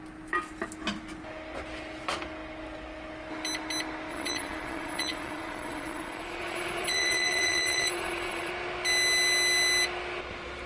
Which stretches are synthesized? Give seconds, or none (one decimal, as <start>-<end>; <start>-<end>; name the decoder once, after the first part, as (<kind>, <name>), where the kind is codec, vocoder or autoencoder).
4.1-8.5 (vocoder, Vocos)